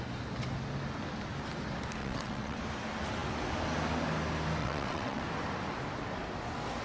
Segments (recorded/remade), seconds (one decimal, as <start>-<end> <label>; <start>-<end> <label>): 0.0-2.0 recorded; 2.0-2.6 remade; 2.6-4.6 recorded; 4.6-5.2 remade; 5.2-6.8 recorded